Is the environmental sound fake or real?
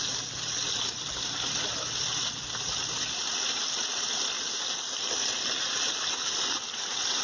real